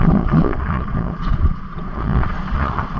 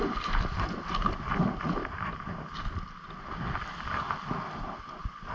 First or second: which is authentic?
second